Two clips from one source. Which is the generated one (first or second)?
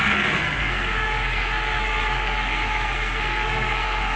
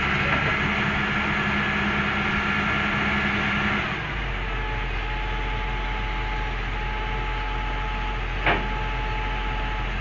first